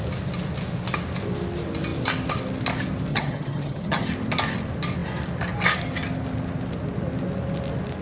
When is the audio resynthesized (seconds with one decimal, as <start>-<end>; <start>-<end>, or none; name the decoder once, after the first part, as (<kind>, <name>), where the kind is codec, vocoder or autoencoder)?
3.1-4.1 (vocoder, HiFi-GAN)